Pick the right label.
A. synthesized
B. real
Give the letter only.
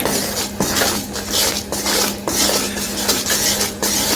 B